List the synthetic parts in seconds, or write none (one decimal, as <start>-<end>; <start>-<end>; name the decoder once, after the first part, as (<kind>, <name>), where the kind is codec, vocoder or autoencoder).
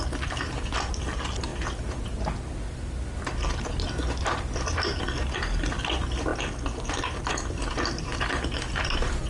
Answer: none